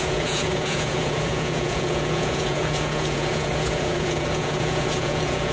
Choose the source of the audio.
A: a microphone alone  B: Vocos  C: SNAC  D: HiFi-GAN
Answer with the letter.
B